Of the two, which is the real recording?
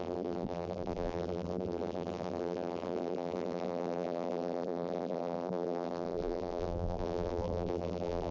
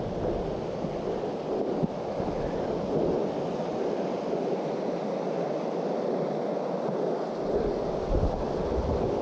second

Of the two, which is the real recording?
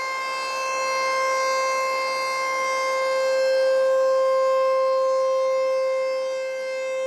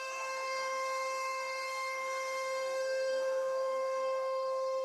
first